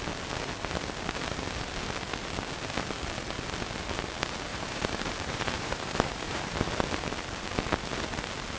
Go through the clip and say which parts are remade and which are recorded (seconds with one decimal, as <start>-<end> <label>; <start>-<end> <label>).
0.0-4.5 recorded; 4.5-6.7 remade; 6.7-8.6 recorded